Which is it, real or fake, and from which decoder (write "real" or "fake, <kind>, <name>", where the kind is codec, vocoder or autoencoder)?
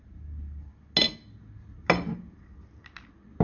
real